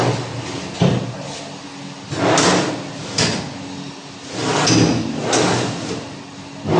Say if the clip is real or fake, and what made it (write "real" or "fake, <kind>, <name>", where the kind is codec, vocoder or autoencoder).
real